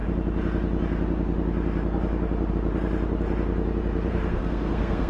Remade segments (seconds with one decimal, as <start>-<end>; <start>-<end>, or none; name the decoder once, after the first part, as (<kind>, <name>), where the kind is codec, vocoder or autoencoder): 4.1-5.1 (codec, SNAC)

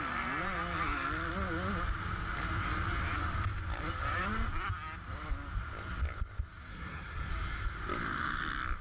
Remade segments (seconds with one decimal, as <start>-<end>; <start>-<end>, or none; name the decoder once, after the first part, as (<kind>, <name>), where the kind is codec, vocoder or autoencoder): 6.7-7.3 (codec, SNAC)

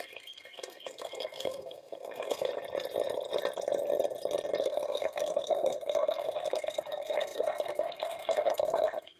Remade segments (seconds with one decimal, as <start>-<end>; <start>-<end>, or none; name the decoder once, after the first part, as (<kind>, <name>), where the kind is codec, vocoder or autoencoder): 0.0-2.5 (codec, SNAC); 4.6-9.2

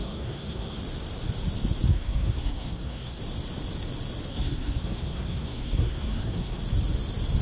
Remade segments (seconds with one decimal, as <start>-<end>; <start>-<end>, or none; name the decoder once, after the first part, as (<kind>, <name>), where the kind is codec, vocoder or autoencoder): 0.0-0.8 (codec, SNAC); 1.9-3.2; 4.3-6.6

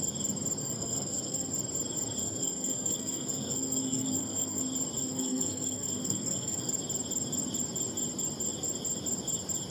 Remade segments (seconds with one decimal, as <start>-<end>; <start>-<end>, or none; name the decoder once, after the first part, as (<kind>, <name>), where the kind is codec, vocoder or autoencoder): 0.6-1.5 (codec, SNAC); 2.2-4.6; 5.0-6.7

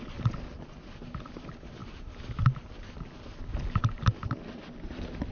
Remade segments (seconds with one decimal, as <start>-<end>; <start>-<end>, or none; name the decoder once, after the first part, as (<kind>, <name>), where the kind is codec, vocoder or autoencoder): none

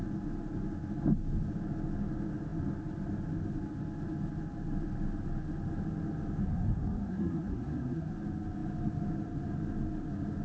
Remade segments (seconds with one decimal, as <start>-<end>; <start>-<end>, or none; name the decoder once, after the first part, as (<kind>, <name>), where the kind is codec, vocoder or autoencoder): 6.4-8.1 (codec, SNAC)

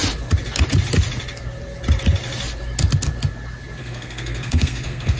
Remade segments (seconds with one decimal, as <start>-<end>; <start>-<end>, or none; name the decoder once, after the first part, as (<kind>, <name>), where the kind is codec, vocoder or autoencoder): 3.8-5.2 (codec, SNAC)